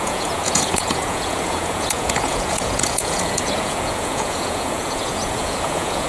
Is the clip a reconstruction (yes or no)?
yes